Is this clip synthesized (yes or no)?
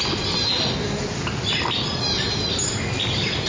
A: no